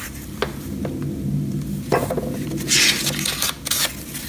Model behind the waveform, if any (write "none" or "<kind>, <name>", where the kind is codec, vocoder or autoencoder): none